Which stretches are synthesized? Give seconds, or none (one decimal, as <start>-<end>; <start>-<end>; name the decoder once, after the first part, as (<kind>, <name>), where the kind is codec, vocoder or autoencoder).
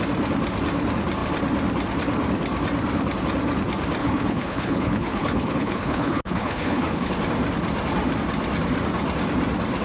4.0-7.1 (codec, HILCodec)